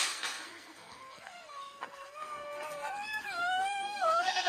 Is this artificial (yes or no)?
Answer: yes